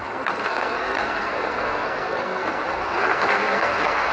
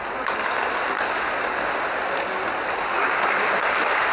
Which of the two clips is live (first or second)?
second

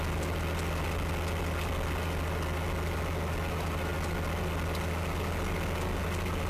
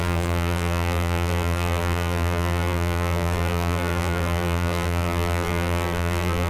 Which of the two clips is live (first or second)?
first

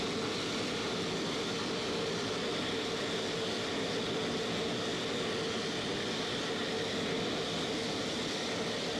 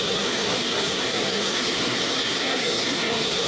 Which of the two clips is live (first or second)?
first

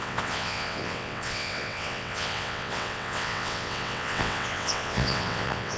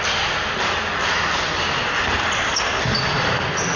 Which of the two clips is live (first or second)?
second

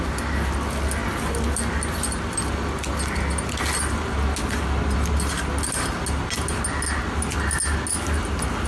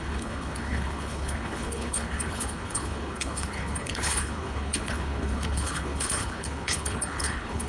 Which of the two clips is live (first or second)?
first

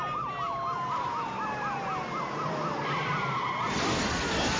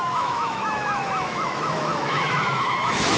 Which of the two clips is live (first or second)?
first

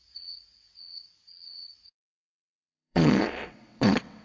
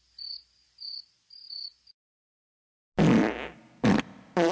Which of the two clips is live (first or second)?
second